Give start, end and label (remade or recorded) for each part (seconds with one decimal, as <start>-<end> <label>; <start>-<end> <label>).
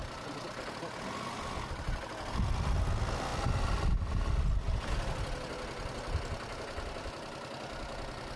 0.0-8.4 recorded